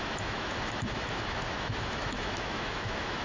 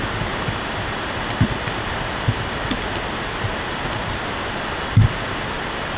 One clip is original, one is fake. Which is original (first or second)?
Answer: second